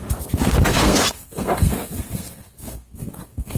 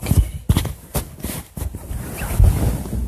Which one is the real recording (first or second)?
second